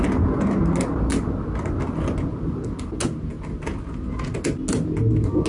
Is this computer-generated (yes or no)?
no